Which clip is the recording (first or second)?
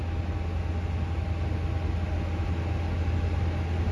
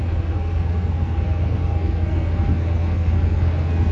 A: first